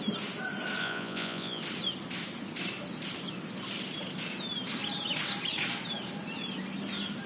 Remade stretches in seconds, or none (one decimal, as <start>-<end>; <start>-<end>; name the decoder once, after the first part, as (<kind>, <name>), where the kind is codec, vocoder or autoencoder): 0.8-1.6 (vocoder, Vocos)